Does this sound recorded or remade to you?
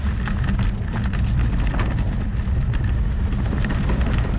recorded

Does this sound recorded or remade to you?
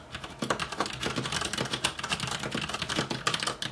recorded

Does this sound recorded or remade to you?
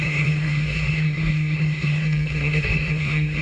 remade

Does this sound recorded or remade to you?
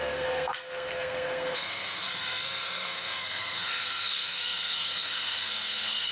remade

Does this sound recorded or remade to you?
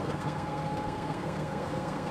remade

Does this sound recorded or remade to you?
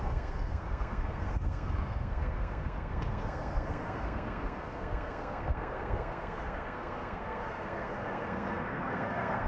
remade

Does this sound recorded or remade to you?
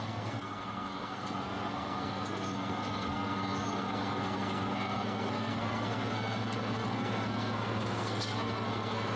remade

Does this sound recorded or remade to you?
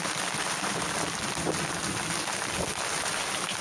recorded